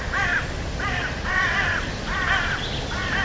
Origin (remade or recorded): recorded